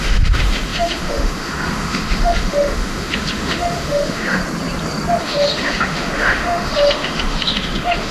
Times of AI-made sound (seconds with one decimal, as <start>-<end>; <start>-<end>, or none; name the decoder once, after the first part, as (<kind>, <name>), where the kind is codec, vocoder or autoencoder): 0.0-4.4 (autoencoder, DAC-VAE); 5.2-8.1